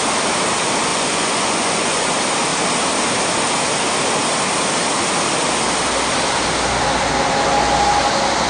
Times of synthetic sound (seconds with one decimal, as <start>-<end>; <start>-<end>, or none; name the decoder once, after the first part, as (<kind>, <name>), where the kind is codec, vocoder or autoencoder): 0.9-2.1 (vocoder, Vocos)